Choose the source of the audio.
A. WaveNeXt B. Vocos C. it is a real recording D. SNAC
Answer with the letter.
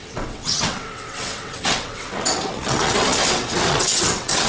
A